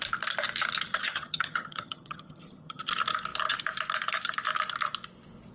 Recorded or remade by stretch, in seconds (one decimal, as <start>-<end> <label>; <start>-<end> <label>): 0.0-0.9 recorded; 0.9-2.9 remade; 2.9-5.5 recorded